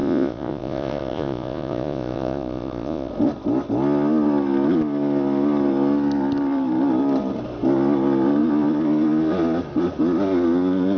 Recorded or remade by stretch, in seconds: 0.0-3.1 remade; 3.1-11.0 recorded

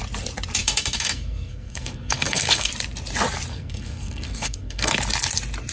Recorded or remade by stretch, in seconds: 0.0-0.6 recorded; 0.6-2.7 remade; 2.7-3.5 recorded; 3.5-4.9 remade; 4.9-5.7 recorded

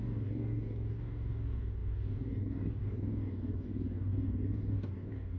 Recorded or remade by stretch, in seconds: 0.0-5.4 remade

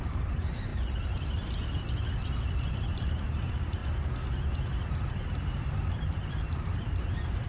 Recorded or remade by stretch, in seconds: 0.0-0.7 remade; 0.7-2.6 recorded; 2.6-3.8 remade; 3.8-5.9 recorded; 5.9-7.5 remade

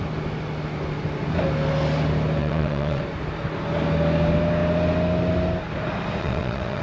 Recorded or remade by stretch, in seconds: 0.0-2.4 recorded; 2.4-3.0 remade; 3.0-6.2 recorded; 6.2-6.8 remade

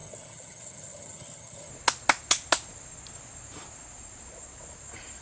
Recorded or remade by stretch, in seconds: 0.0-1.7 remade; 1.7-5.2 recorded

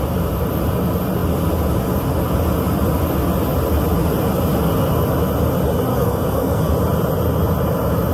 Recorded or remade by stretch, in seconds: 0.0-5.9 recorded; 5.9-6.7 remade; 6.7-8.1 recorded

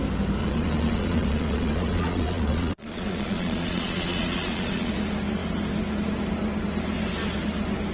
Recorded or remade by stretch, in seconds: 0.0-0.4 recorded; 0.4-4.9 remade; 4.9-7.9 recorded